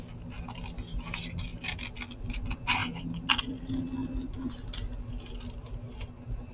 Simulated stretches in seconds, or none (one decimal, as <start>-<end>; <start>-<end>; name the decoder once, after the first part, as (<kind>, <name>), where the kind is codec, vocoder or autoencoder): none